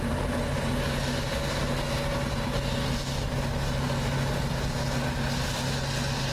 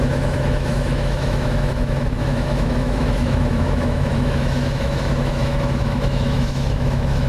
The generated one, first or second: second